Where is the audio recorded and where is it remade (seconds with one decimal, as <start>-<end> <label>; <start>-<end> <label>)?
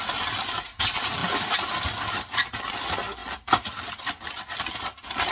0.0-5.3 recorded